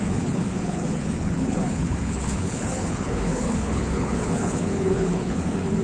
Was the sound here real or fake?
fake